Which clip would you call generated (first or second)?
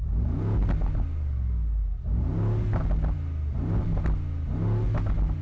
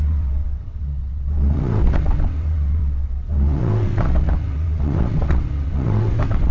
second